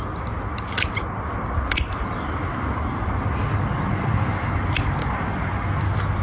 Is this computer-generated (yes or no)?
no